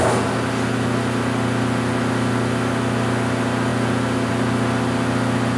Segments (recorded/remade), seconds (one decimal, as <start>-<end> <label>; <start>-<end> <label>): 0.0-5.6 recorded